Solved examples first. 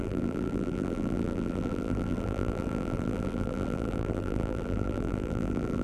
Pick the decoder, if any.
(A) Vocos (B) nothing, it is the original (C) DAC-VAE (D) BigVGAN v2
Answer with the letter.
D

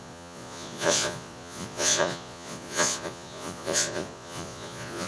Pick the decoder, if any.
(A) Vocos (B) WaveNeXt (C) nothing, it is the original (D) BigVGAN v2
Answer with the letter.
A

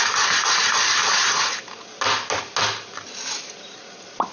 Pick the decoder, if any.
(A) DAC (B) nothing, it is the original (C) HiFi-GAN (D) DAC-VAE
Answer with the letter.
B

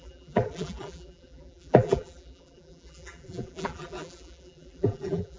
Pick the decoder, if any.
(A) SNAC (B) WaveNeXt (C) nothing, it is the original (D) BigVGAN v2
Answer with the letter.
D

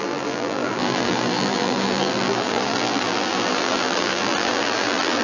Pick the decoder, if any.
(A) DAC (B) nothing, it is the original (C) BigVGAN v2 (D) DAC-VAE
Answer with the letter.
C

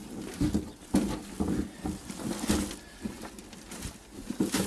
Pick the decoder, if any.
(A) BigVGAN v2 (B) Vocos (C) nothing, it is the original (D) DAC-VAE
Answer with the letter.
C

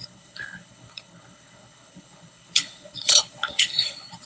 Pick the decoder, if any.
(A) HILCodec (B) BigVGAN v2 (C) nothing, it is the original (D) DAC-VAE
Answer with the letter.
A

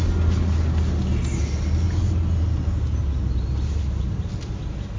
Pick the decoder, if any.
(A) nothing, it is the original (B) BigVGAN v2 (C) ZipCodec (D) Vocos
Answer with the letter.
A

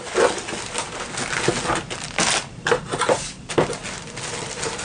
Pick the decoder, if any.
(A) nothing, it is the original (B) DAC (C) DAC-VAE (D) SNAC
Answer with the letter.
A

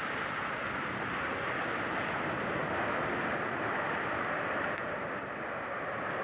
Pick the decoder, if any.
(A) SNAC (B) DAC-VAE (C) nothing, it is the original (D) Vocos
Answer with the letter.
C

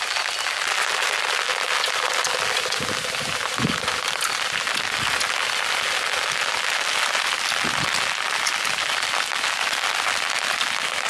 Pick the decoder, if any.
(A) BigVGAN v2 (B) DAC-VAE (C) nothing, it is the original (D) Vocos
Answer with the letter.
C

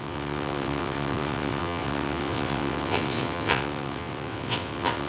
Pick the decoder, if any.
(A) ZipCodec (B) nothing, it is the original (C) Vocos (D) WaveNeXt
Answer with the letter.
D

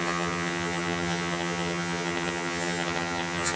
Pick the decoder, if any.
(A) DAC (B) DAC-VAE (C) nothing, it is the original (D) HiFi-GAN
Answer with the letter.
D